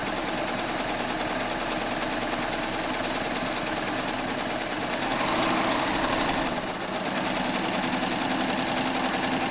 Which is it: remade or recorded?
recorded